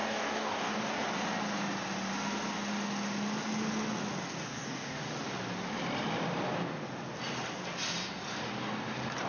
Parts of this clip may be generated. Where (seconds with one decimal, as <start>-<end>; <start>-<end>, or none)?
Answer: 0.0-1.0; 4.5-5.1

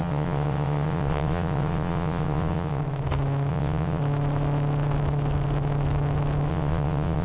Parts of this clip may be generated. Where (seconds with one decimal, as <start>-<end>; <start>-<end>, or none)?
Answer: 0.0-2.8; 3.5-4.0; 6.5-7.2

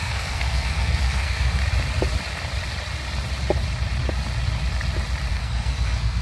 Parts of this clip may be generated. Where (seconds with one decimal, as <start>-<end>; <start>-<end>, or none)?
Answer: 0.0-1.6; 5.3-6.2